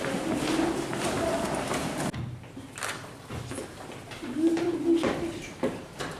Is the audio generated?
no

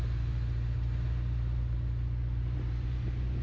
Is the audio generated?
no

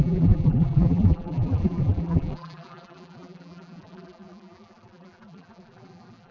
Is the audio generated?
yes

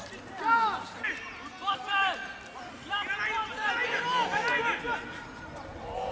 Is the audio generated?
no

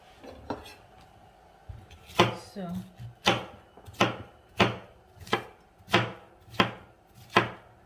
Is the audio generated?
no